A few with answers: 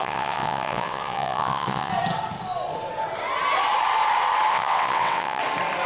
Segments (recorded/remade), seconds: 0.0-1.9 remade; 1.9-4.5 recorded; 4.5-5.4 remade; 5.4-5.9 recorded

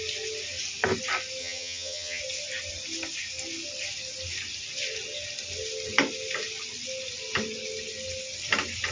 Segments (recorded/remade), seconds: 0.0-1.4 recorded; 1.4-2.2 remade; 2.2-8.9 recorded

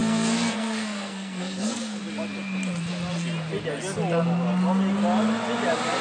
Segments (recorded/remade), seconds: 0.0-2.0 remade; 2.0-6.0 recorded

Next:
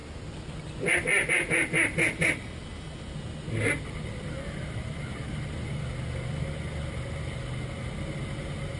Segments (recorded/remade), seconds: 0.0-8.8 recorded

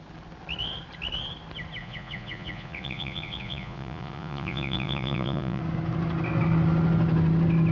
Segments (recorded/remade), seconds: 0.0-1.8 recorded; 1.8-5.6 remade; 5.6-7.7 recorded

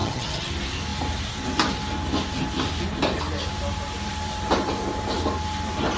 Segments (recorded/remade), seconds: 0.0-0.5 remade; 0.5-6.0 recorded

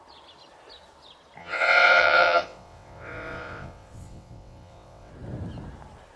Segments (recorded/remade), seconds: 0.0-1.4 recorded; 1.4-5.1 remade; 5.1-6.2 recorded